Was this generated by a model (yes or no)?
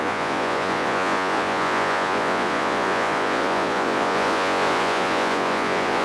yes